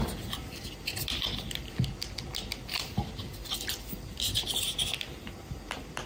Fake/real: real